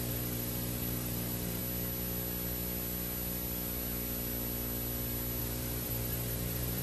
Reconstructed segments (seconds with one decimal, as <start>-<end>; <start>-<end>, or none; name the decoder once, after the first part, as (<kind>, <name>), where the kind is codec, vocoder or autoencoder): 0.0-1.6 (vocoder, BigVGAN v2); 5.4-6.8